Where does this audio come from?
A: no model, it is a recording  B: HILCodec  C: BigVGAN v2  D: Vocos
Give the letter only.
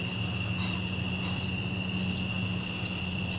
A